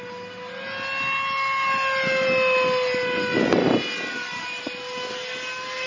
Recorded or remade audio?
recorded